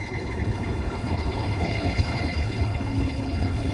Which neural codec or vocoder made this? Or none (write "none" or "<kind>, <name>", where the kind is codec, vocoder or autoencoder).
codec, HILCodec